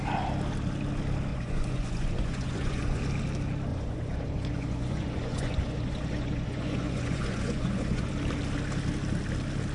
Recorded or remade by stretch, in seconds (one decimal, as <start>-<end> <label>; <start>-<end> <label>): 0.0-1.3 recorded; 1.3-3.0 remade; 3.0-3.7 recorded; 3.7-8.1 remade; 8.1-9.7 recorded